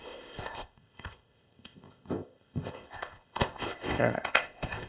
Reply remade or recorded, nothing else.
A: remade